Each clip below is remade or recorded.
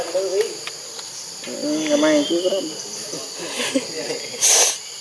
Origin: recorded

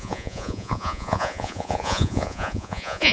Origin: remade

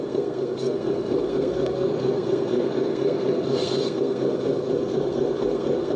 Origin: remade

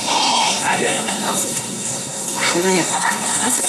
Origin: remade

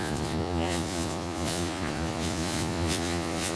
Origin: remade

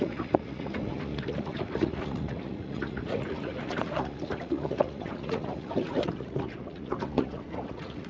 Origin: remade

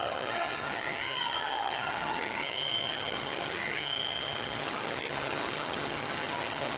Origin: remade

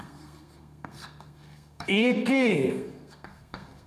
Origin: remade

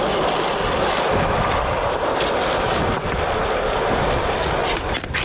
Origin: recorded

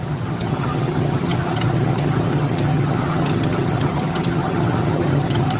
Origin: remade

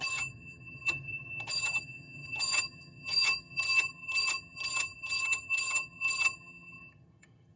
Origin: remade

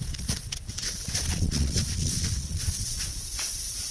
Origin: remade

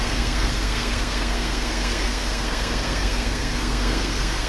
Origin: remade